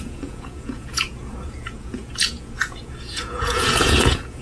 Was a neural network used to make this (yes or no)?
yes